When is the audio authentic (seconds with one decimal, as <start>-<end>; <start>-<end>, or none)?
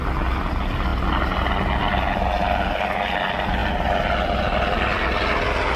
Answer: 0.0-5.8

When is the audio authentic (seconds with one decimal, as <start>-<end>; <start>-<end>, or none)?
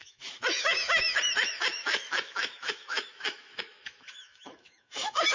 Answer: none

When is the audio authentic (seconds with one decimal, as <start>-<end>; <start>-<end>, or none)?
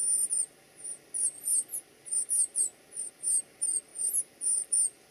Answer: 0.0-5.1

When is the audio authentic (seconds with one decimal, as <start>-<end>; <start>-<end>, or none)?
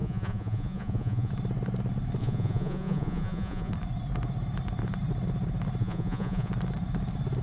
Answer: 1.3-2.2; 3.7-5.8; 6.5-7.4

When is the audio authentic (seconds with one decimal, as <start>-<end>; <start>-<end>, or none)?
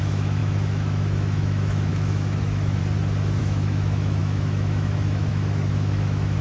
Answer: 2.8-3.4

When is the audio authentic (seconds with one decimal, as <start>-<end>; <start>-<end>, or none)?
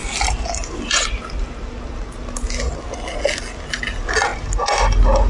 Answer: 0.0-5.3